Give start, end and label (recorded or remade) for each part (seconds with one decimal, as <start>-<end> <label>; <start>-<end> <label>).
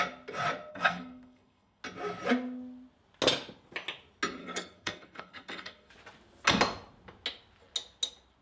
0.0-0.7 recorded; 0.7-1.8 remade; 1.8-4.4 recorded; 4.4-5.9 remade; 5.9-8.4 recorded